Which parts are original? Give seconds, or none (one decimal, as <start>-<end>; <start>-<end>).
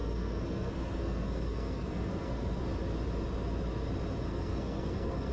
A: 2.6-4.3